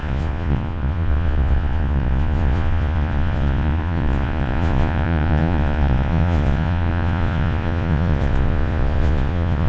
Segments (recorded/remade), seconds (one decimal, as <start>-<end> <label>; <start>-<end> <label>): 0.0-9.7 remade